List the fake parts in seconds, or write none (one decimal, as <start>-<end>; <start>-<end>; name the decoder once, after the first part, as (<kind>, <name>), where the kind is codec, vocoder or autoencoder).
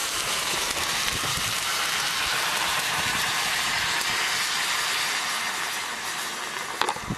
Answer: 0.0-3.6 (vocoder, BigVGAN v2)